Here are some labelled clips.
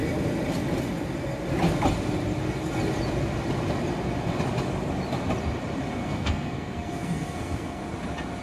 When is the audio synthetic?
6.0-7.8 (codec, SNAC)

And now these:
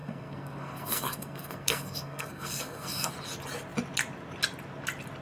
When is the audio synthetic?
0.0-3.1 (codec, SNAC)

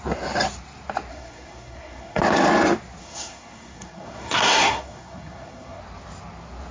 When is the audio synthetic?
1.1-2.2 (codec, SNAC); 3.0-5.8

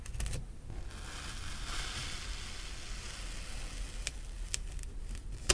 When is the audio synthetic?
none

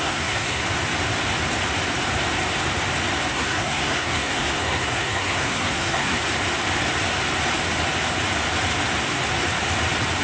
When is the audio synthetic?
0.0-0.6 (codec, SNAC); 3.3-6.3